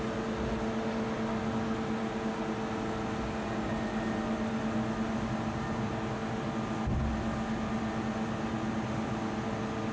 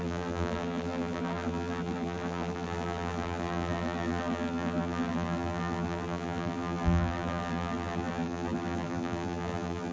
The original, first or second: first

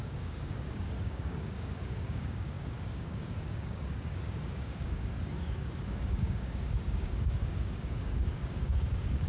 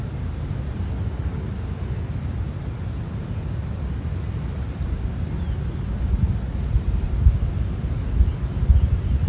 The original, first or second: second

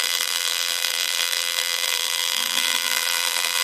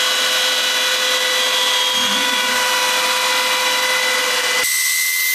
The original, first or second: second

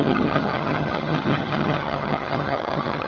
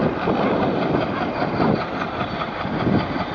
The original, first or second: second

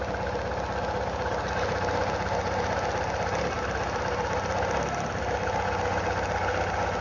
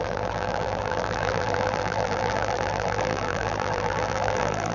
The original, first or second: first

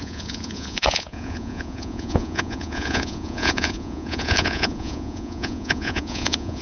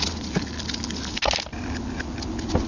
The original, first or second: second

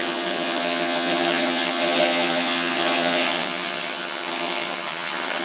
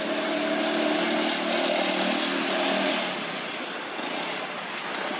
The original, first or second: second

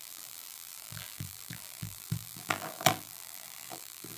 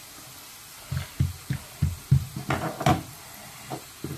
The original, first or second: second